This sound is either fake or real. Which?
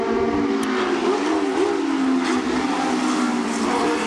real